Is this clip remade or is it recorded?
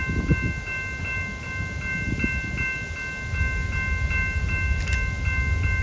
recorded